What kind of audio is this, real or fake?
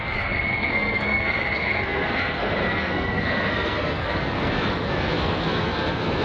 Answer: fake